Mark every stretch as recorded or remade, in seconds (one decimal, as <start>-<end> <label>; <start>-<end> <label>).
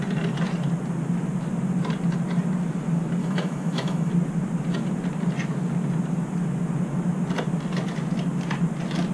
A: 0.0-3.2 recorded; 3.2-4.1 remade; 4.1-9.1 recorded